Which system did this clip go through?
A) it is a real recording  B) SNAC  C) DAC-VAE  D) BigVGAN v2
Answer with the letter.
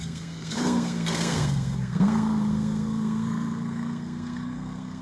B